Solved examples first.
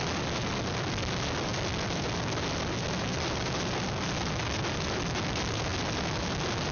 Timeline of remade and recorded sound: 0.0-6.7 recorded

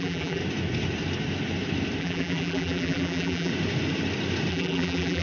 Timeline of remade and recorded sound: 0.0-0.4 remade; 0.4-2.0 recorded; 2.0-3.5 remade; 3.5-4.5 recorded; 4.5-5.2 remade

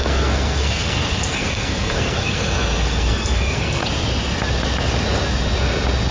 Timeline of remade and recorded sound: 0.0-3.8 remade; 3.8-6.1 recorded

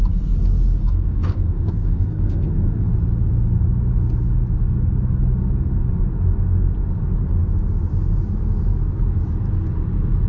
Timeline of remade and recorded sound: 0.0-0.8 recorded; 0.8-2.9 remade; 2.9-10.3 recorded

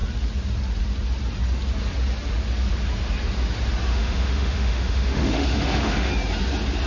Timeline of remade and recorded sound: 0.0-3.9 recorded; 3.9-6.1 remade; 6.1-6.9 recorded

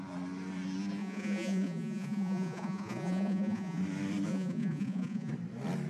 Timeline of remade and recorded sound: 0.0-1.0 recorded; 1.0-3.8 remade; 3.8-4.3 recorded; 4.3-5.3 remade; 5.3-5.9 recorded

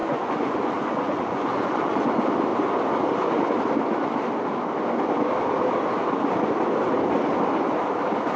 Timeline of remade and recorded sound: 0.0-2.1 remade; 2.1-8.4 recorded

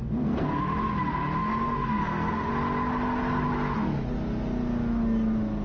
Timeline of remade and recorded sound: 0.0-0.6 remade; 0.6-1.4 recorded; 1.4-2.5 remade; 2.5-5.6 recorded